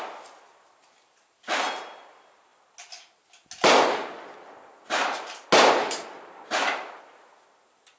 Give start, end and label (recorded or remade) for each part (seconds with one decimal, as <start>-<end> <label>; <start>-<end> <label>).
0.0-8.0 recorded